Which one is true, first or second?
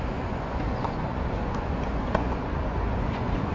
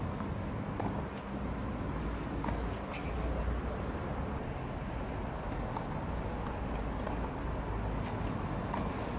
second